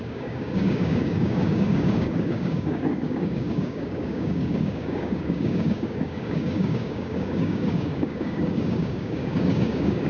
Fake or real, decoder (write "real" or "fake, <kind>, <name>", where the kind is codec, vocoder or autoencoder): fake, codec, DAC